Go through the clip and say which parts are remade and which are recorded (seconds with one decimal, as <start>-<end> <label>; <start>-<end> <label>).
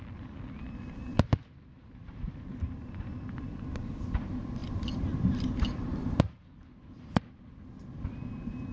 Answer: 0.0-1.1 recorded; 1.1-3.1 remade; 3.1-5.9 recorded; 5.9-6.7 remade; 6.7-8.7 recorded